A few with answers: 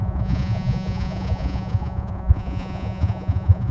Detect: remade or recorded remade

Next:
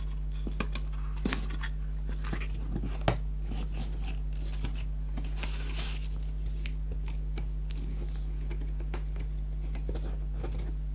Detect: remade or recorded recorded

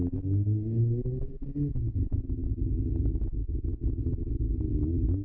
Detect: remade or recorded recorded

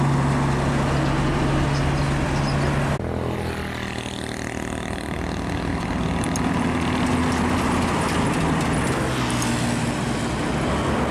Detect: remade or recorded recorded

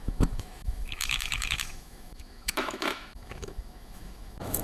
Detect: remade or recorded remade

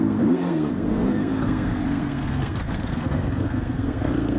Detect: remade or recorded remade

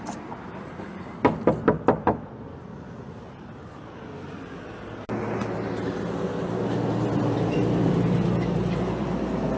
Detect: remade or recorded recorded